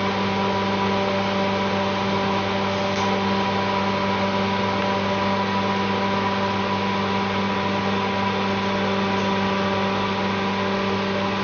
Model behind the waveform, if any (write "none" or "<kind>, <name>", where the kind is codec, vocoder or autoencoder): none